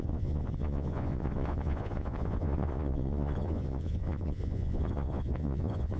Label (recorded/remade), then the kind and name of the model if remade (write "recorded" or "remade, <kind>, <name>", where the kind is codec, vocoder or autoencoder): remade, vocoder, Vocos